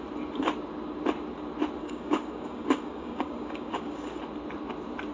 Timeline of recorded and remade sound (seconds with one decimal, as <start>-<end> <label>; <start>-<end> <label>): 0.0-1.8 recorded; 1.8-4.2 remade; 4.2-5.1 recorded